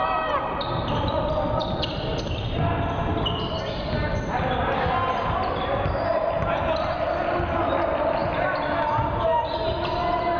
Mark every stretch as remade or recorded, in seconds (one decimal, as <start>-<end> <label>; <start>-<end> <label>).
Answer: 0.0-10.4 recorded